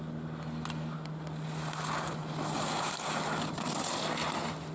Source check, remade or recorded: recorded